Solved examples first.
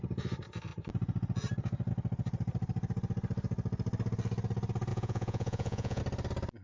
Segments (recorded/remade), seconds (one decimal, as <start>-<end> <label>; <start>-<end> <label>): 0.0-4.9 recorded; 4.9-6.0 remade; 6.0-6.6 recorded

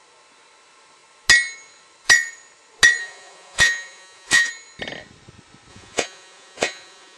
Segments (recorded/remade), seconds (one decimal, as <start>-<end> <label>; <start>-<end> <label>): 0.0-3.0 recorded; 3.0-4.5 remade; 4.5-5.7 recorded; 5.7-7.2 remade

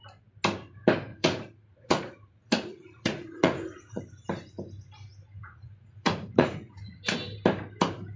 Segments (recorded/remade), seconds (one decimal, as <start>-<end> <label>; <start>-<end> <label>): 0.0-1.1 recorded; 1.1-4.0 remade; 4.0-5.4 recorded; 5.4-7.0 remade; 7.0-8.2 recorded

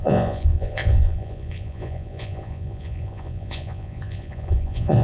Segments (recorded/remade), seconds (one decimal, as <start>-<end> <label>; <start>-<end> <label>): 0.0-5.0 remade